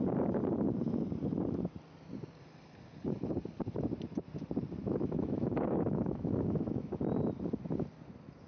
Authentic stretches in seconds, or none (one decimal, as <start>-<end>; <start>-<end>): 0.0-4.8; 6.9-8.5